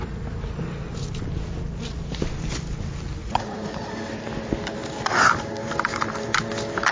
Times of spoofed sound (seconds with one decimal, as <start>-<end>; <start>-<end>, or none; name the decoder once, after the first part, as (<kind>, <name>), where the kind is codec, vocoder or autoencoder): 3.2-3.9 (vocoder, Vocos)